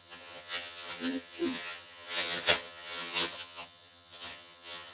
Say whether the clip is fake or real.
fake